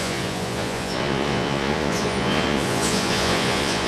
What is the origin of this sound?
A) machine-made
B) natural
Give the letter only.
A